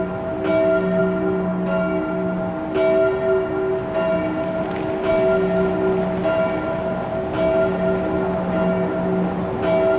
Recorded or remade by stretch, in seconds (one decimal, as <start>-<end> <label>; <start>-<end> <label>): 0.0-10.0 recorded

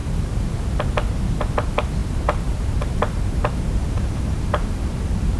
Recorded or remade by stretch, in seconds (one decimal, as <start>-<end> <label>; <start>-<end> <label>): 0.0-0.6 remade; 0.6-2.0 recorded; 2.0-5.4 remade

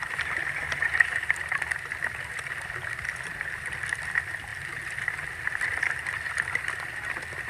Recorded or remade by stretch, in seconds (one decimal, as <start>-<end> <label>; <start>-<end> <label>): 0.0-7.5 recorded

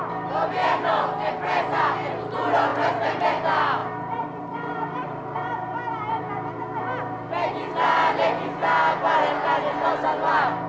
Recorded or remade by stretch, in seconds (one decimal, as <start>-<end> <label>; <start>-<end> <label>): 0.0-2.7 recorded; 2.7-3.3 remade; 3.3-3.8 recorded; 3.8-6.3 remade; 6.3-10.7 recorded

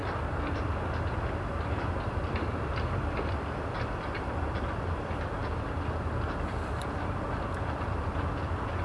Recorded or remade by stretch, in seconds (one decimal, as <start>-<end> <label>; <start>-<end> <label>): 0.0-1.9 recorded; 1.9-8.8 remade

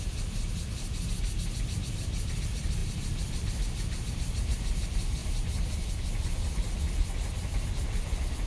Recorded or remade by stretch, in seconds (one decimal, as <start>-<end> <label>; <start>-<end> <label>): 0.0-5.2 recorded; 5.2-5.9 remade; 5.9-8.5 recorded

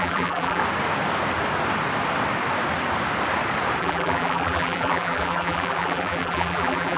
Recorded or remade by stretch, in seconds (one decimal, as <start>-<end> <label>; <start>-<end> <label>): 0.0-0.6 remade; 0.6-3.8 recorded; 3.8-7.0 remade